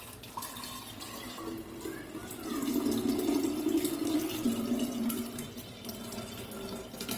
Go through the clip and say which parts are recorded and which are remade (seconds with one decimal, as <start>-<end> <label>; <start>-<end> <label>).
0.0-7.2 recorded